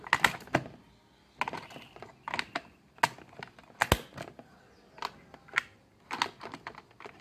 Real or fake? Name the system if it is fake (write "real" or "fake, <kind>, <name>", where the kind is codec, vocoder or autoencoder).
real